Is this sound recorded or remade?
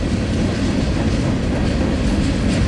recorded